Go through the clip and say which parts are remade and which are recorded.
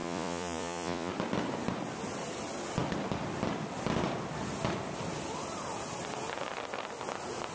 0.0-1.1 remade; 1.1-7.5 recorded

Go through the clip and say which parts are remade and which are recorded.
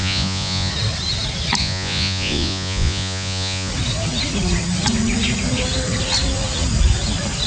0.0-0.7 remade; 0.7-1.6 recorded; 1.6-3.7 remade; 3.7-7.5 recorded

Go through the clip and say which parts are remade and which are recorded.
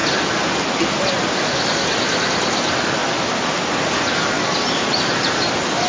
0.0-5.9 recorded